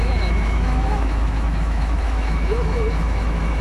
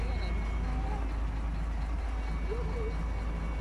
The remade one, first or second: first